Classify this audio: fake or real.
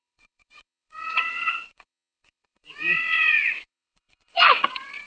fake